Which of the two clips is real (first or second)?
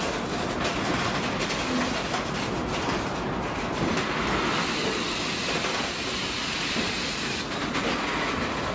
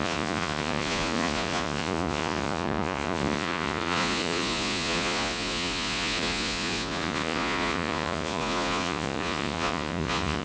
first